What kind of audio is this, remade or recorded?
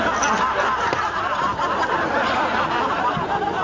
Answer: recorded